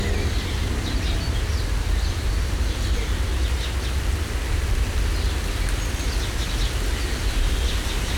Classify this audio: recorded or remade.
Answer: recorded